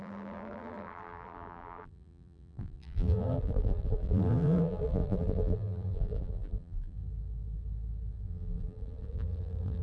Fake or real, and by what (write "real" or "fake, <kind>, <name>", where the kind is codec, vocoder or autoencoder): fake, vocoder, BigVGAN v2